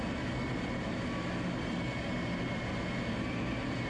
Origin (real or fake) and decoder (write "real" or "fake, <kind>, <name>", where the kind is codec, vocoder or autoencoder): real